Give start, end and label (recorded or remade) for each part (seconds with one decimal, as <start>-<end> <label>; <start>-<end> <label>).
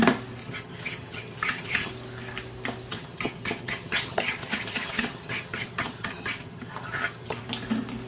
0.0-0.4 recorded; 0.4-1.9 remade; 1.9-2.9 recorded; 2.9-7.4 remade; 7.4-8.1 recorded